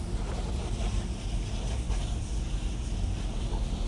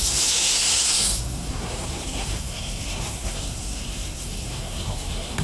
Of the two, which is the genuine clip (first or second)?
first